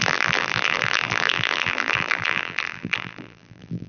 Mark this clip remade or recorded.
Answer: remade